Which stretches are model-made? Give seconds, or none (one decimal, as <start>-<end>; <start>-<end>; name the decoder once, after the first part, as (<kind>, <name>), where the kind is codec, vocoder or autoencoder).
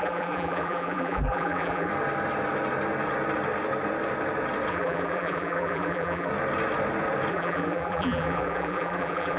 0.0-1.9 (vocoder, BigVGAN v2); 4.7-6.3; 7.3-9.4